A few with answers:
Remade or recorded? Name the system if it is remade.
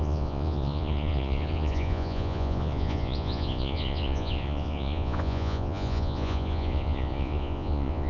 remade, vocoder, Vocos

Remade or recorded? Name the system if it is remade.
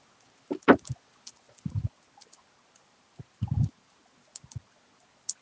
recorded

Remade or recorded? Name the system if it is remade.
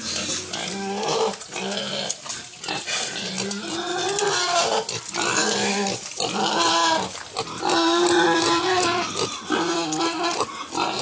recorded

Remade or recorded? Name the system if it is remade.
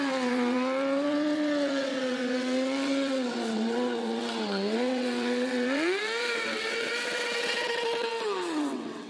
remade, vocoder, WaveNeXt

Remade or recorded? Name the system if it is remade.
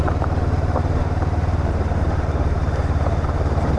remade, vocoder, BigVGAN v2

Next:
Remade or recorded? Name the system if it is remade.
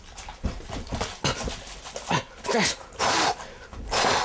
recorded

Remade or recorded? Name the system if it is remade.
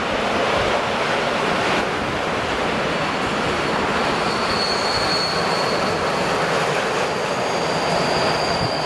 recorded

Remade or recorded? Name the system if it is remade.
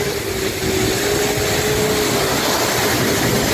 recorded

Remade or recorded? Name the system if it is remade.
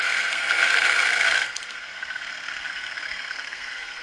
remade, codec, SNAC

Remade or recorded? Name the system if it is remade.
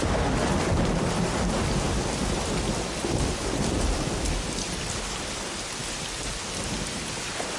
recorded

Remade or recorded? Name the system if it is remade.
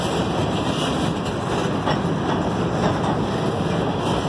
recorded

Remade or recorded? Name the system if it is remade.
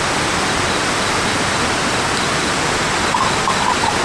recorded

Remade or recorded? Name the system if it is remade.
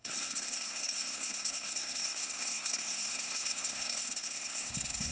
remade, codec, SNAC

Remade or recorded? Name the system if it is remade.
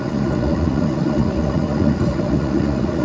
remade, vocoder, Vocos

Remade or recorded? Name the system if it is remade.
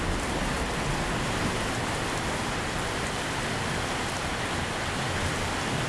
recorded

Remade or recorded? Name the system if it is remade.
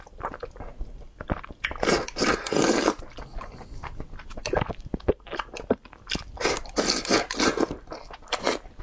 recorded